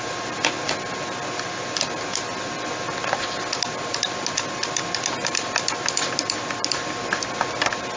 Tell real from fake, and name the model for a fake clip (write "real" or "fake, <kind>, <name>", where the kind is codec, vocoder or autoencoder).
real